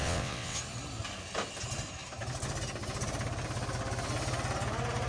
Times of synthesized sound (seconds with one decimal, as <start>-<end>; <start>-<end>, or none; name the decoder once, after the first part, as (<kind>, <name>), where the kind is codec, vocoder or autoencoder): 0.0-0.6 (vocoder, WaveNeXt)